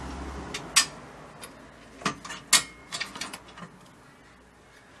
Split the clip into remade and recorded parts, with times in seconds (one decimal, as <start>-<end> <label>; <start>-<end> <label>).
0.0-2.8 recorded; 2.8-3.6 remade; 3.6-5.0 recorded